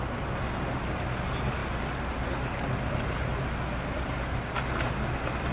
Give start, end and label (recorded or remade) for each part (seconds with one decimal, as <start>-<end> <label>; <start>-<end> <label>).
0.0-5.5 recorded